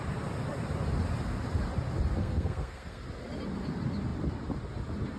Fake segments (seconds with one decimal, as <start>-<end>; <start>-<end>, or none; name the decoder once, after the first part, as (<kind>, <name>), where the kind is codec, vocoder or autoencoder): 2.2-3.0 (codec, SNAC)